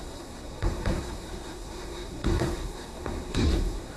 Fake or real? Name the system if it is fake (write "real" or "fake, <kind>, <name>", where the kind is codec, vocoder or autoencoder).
fake, codec, SNAC